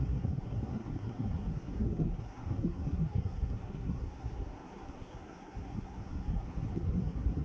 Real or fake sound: fake